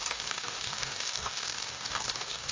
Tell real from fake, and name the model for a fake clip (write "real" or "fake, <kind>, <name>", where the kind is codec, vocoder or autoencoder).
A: fake, codec, DAC